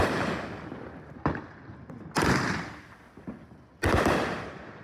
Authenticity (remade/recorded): recorded